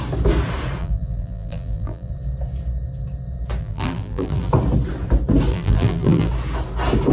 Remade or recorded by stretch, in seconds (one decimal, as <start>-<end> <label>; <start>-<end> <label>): 0.0-0.8 recorded; 0.8-2.1 remade; 2.1-3.6 recorded; 3.6-4.5 remade; 4.5-5.5 recorded; 5.5-6.3 remade; 6.3-7.1 recorded